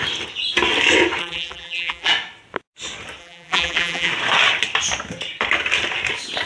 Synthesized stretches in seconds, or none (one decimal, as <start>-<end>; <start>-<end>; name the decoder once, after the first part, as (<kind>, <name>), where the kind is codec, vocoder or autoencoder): 1.2-2.1 (vocoder, BigVGAN v2); 3.2-4.1